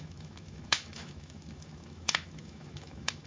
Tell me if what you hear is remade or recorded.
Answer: remade